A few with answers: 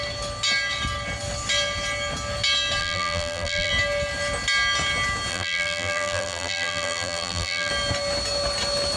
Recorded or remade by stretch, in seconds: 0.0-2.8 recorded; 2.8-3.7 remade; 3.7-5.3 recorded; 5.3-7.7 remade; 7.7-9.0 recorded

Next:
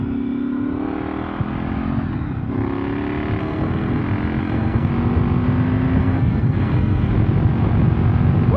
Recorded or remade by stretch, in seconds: 0.0-3.4 recorded; 3.4-4.0 remade; 4.0-4.4 recorded; 4.4-4.9 remade; 4.9-6.0 recorded; 6.0-7.1 remade; 7.1-8.6 recorded

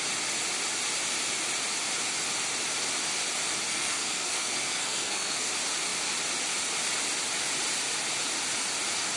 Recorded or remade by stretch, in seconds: 0.0-3.7 recorded; 3.7-5.5 remade; 5.5-9.2 recorded

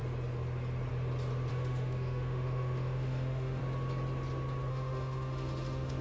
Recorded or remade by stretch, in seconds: 0.0-1.5 recorded; 1.5-3.6 remade; 3.6-4.7 recorded; 4.7-6.0 remade

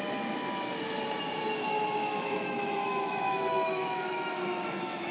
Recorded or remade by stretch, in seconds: 0.0-2.0 recorded; 2.0-5.1 remade

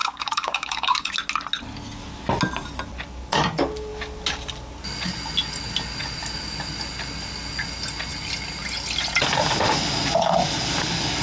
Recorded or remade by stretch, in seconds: 0.0-1.1 remade; 1.1-11.2 recorded

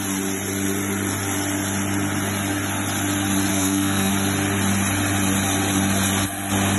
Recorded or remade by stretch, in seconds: 0.0-3.5 recorded; 3.5-4.1 remade; 4.1-6.8 recorded